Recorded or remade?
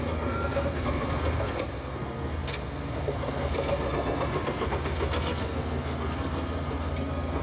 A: remade